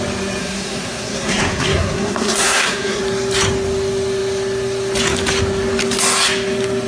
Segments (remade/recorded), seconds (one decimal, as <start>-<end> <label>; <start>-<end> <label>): 0.0-0.4 recorded; 0.4-3.0 remade; 3.0-6.9 recorded